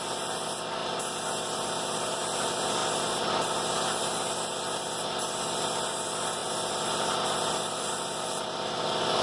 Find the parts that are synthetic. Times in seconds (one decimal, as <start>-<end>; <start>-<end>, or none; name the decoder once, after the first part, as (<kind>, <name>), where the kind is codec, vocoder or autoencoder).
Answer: none